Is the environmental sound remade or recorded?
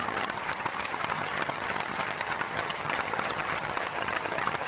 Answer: remade